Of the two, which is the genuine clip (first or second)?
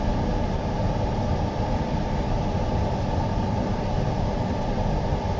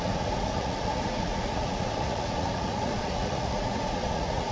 first